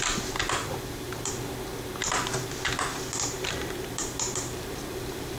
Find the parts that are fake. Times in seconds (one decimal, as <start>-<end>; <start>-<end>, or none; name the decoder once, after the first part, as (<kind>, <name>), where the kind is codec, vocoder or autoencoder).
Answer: 0.6-1.3 (vocoder, BigVGAN v2); 2.9-5.4